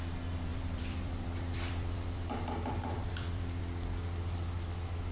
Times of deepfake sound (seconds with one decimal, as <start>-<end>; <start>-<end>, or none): 0.5-3.6